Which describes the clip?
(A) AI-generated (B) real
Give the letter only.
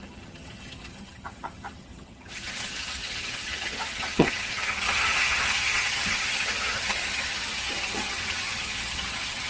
A